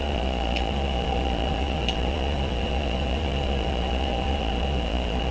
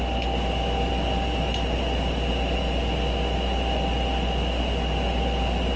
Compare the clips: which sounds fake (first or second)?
first